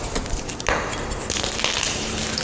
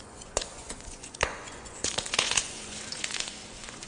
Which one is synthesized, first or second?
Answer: second